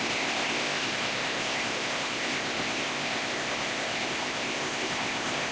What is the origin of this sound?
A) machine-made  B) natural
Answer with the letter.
A